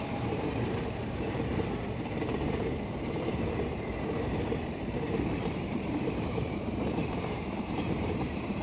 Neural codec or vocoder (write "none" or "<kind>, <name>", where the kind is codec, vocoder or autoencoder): vocoder, BigVGAN v2